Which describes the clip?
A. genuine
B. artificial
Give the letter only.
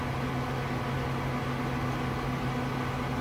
A